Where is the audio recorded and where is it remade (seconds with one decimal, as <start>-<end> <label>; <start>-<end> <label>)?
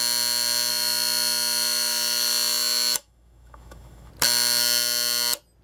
0.0-0.7 recorded; 0.7-4.1 remade; 4.1-5.6 recorded